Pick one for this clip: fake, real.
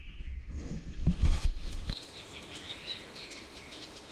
fake